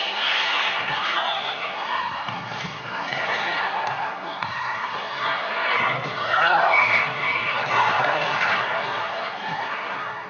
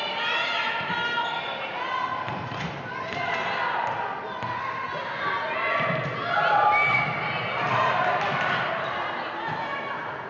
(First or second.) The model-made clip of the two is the first